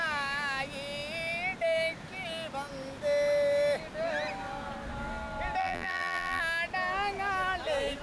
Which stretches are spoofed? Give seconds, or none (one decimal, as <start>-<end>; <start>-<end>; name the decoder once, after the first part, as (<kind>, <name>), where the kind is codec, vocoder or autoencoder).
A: 5.6-6.4 (vocoder, BigVGAN v2)